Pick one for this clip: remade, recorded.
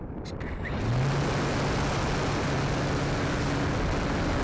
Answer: recorded